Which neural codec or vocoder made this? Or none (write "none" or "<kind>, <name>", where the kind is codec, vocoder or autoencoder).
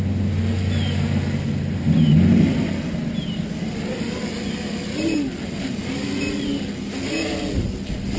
none